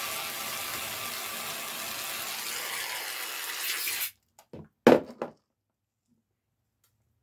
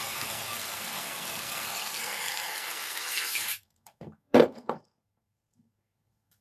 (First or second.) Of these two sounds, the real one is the first